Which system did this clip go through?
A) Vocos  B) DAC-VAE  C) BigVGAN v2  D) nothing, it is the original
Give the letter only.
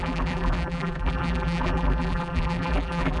C